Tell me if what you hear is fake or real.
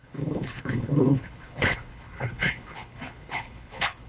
fake